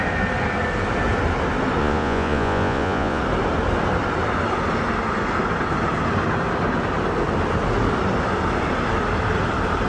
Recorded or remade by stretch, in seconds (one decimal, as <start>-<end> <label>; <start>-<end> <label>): 0.0-1.8 recorded; 1.8-3.2 remade; 3.2-9.9 recorded